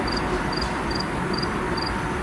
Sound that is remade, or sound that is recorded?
recorded